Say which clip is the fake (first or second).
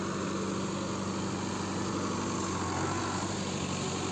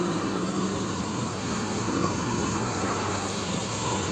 second